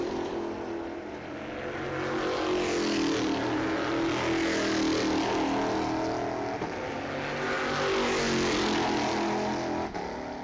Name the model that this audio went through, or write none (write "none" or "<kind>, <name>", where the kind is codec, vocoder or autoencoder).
none